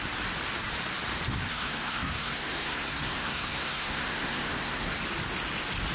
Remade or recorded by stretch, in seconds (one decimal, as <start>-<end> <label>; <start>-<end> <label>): 0.0-1.5 recorded; 1.5-5.0 remade; 5.0-5.9 recorded